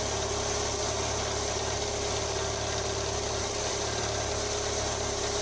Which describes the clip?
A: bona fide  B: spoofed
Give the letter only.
A